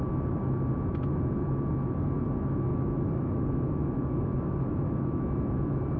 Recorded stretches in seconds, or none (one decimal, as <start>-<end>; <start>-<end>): 0.0-2.7; 5.3-6.0